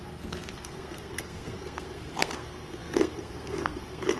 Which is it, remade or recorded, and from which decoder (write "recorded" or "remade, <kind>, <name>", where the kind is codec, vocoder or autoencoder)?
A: remade, codec, SNAC